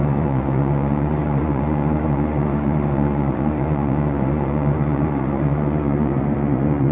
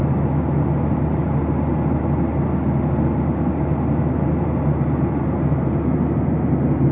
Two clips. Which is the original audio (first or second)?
second